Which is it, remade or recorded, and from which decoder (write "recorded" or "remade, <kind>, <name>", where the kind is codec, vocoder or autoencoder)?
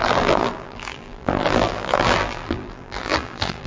remade, vocoder, BigVGAN v2